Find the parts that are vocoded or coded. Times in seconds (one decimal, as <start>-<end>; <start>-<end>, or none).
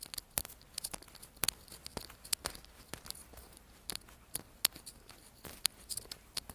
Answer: none